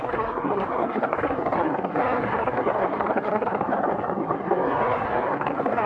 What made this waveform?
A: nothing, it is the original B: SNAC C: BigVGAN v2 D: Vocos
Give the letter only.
B